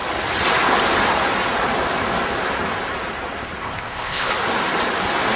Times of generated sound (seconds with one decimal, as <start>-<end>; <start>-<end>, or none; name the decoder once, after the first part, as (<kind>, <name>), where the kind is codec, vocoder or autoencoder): 3.6-4.3 (codec, ZipCodec)